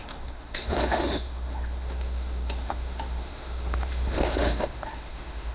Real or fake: fake